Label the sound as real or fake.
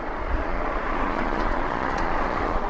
fake